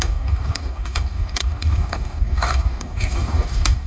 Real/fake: fake